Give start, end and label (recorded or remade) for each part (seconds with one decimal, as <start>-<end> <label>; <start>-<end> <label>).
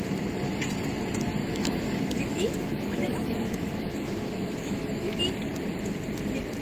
0.0-1.4 recorded; 1.4-5.2 remade; 5.2-6.6 recorded